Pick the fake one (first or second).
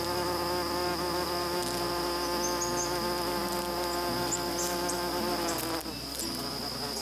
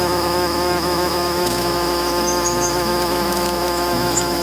second